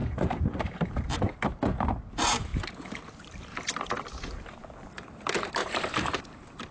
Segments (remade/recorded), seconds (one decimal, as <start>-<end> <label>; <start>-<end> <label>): 0.0-1.2 remade; 1.2-3.5 recorded; 3.5-4.4 remade; 4.4-5.6 recorded; 5.6-6.2 remade; 6.2-6.7 recorded